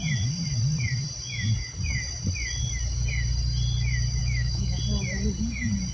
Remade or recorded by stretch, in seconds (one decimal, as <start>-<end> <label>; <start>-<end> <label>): 0.0-4.2 recorded; 4.2-4.8 remade; 4.8-5.9 recorded